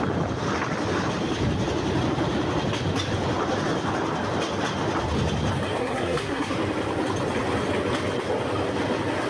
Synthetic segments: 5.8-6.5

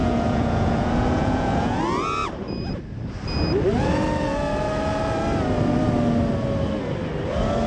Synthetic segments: 0.0-1.8

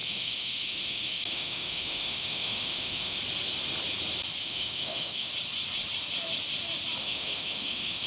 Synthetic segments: 0.0-3.2; 4.4-5.3; 7.0-8.1

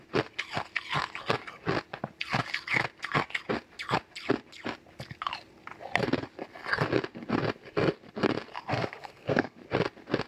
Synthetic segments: 8.7-9.6

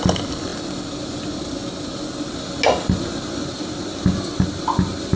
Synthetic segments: none

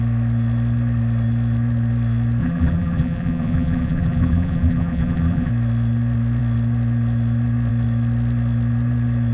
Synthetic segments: 2.4-5.5

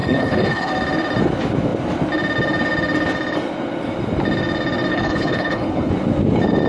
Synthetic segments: 0.0-0.7; 4.9-5.9